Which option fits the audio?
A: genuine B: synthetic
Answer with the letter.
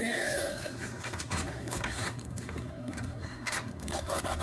B